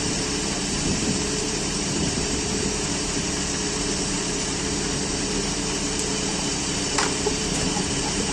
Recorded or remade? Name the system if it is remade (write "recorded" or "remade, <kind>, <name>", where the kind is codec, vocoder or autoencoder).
remade, vocoder, BigVGAN v2